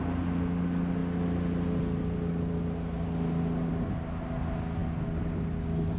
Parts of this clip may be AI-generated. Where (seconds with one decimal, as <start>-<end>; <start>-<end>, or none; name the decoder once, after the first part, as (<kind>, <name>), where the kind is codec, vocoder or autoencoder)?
none

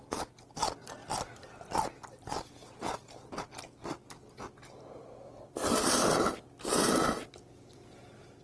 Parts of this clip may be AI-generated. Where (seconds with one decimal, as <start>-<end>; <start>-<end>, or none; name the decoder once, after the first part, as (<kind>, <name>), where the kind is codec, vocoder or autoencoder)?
none

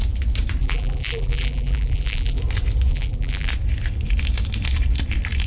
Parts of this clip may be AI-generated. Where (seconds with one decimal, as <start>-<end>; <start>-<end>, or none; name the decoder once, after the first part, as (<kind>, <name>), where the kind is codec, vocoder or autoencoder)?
0.6-2.4 (vocoder, BigVGAN v2); 2.9-3.5

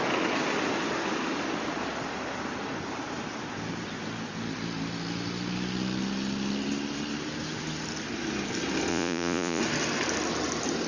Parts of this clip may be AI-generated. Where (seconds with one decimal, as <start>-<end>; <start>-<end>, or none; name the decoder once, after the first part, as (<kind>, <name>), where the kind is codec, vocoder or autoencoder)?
8.9-9.6 (vocoder, Vocos)

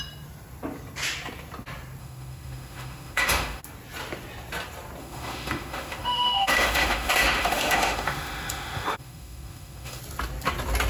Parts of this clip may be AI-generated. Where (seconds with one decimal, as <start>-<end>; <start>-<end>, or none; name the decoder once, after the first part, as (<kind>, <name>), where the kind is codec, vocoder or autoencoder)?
2.0-3.6 (autoencoder, DAC-VAE); 5.0-10.0

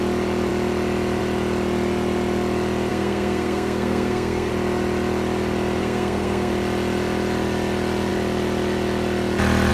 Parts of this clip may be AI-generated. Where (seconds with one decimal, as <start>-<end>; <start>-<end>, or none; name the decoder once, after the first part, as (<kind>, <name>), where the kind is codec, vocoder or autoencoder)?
2.9-4.5 (codec, SNAC); 5.8-6.5

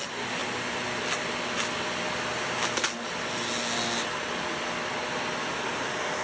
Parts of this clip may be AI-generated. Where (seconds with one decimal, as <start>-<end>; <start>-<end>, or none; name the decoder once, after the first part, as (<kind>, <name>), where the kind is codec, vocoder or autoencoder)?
none

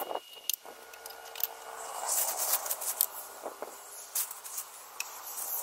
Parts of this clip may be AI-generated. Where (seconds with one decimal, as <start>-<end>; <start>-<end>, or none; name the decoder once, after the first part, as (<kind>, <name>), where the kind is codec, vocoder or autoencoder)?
none